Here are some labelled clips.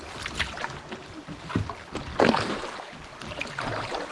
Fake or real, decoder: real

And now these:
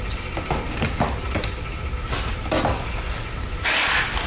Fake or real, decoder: real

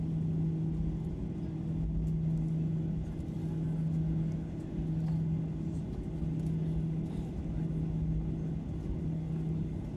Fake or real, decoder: real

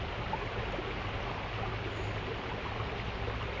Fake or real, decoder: real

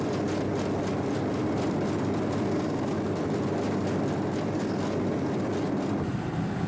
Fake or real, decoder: real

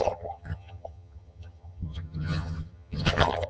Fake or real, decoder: fake, vocoder, HiFi-GAN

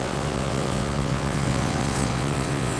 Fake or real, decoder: fake, vocoder, WaveNeXt